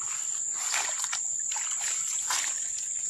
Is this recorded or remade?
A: recorded